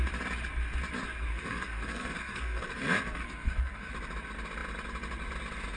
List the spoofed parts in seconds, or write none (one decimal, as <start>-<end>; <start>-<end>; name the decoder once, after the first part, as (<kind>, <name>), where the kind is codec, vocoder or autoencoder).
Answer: 1.3-3.9 (codec, SNAC)